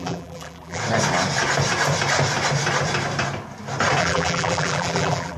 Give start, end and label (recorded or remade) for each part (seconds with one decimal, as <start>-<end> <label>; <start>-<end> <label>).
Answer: 0.0-0.8 remade; 0.8-4.0 recorded; 4.0-5.4 remade